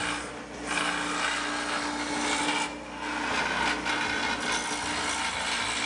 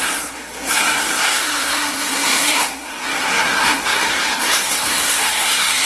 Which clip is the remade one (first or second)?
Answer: second